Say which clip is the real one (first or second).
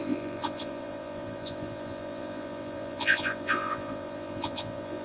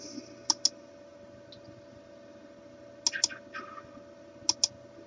second